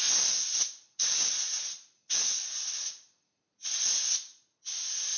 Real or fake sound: real